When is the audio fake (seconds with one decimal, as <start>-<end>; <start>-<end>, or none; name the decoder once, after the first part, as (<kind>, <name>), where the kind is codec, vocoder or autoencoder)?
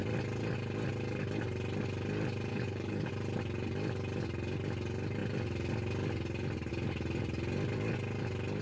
2.5-3.1 (codec, HILCodec)